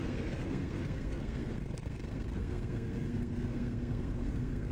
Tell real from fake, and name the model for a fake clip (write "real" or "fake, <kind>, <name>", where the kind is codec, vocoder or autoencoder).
fake, codec, SNAC